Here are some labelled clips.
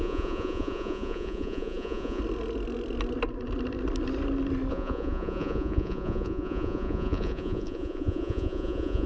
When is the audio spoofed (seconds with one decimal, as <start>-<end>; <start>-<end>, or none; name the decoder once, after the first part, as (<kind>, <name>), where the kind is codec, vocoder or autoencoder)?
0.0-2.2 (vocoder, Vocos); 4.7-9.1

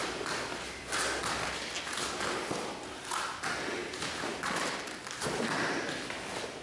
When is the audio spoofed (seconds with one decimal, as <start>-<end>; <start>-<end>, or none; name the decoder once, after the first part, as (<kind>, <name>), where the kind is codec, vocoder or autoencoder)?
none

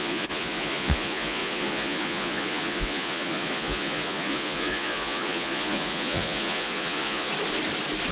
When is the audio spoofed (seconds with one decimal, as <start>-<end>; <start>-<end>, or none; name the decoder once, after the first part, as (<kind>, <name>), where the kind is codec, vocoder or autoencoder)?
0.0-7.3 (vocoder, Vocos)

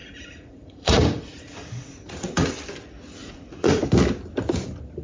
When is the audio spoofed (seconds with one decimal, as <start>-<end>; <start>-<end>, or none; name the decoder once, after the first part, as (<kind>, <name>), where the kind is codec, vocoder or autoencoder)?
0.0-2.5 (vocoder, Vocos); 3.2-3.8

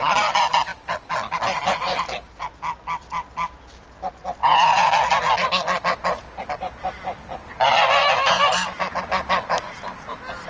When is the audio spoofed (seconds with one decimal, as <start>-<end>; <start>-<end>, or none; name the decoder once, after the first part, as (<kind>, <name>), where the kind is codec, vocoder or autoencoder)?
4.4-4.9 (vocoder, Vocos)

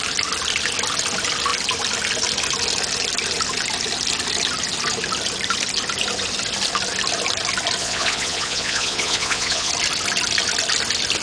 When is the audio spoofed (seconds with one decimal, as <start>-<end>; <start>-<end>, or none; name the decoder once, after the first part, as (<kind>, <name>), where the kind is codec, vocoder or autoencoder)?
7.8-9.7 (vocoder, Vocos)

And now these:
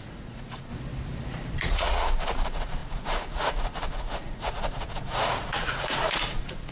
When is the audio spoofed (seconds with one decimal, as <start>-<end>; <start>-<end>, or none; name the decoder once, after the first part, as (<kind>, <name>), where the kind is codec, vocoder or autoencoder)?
0.0-0.7 (vocoder, Vocos); 1.6-6.7

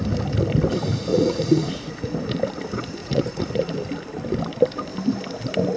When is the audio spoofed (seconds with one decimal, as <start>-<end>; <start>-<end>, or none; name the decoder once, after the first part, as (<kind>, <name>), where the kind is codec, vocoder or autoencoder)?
1.1-2.1 (vocoder, Vocos); 3.0-3.7